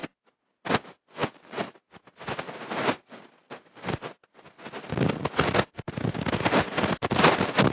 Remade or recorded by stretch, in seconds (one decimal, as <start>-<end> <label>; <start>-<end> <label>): 0.0-7.7 recorded